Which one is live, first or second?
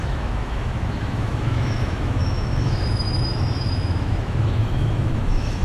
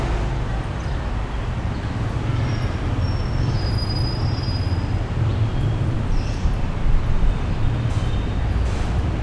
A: second